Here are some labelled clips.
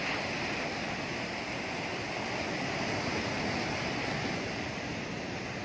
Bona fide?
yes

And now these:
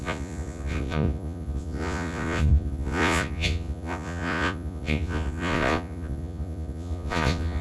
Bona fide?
no